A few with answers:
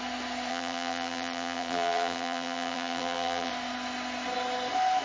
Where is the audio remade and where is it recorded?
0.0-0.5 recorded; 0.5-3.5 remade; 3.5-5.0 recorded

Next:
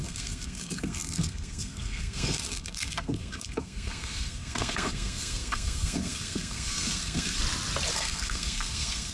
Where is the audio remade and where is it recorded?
0.0-7.4 remade; 7.4-7.9 recorded; 7.9-9.1 remade